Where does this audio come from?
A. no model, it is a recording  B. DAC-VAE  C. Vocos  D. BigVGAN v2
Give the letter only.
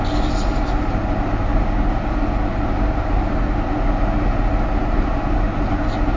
A